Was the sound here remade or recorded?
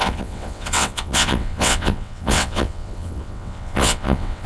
remade